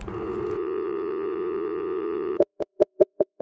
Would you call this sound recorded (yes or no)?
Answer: no